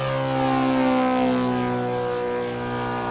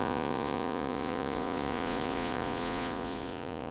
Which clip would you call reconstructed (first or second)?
second